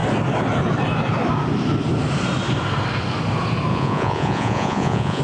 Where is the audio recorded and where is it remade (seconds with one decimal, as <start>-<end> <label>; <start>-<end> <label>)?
0.0-3.7 recorded; 3.7-5.2 remade